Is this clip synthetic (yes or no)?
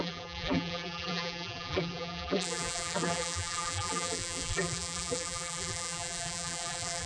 yes